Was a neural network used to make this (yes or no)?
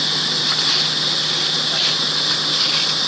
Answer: no